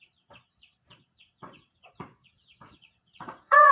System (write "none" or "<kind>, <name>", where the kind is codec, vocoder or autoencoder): vocoder, Vocos